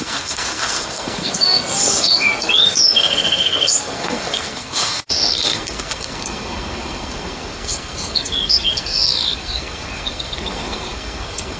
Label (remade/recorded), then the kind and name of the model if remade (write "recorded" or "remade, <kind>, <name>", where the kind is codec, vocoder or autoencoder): remade, codec, SNAC